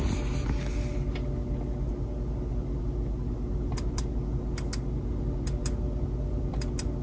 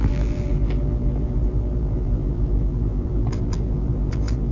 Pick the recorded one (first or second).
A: first